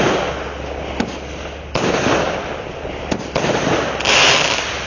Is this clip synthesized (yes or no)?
no